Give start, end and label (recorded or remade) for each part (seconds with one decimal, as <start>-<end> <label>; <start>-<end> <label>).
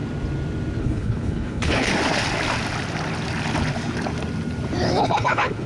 0.0-0.8 recorded; 0.8-1.9 remade; 1.9-5.0 recorded; 5.0-5.7 remade